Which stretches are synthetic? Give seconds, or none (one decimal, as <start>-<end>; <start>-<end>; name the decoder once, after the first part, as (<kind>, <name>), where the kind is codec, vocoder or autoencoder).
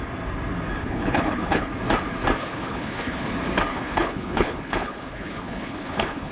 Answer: 0.8-1.7 (codec, HILCodec); 2.4-3.3; 3.7-6.3